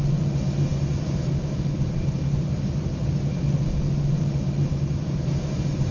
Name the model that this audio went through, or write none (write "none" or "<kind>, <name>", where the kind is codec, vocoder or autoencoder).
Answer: none